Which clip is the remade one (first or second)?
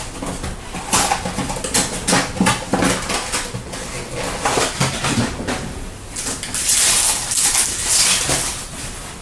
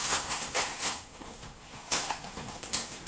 second